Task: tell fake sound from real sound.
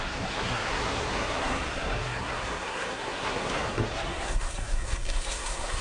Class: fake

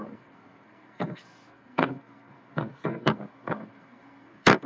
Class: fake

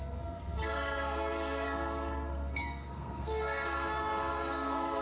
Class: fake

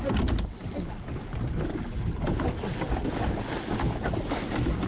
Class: real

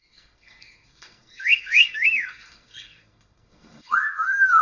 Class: fake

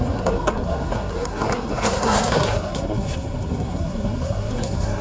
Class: fake